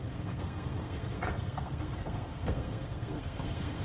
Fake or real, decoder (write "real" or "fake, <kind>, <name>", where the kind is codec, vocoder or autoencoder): fake, codec, SNAC